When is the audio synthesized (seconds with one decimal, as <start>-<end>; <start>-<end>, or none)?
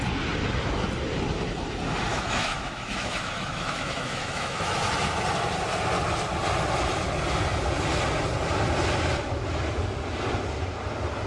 2.1-4.8